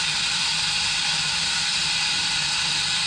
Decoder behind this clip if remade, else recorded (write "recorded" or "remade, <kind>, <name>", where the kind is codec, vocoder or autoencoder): remade, vocoder, BigVGAN v2